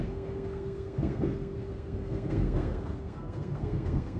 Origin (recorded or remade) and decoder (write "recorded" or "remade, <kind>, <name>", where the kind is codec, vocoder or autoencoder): remade, codec, SNAC